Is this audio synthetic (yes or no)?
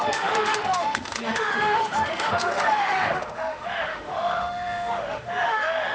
yes